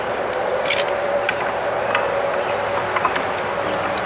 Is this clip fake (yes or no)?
no